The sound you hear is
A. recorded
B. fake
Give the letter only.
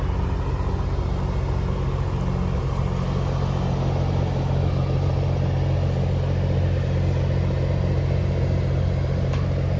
A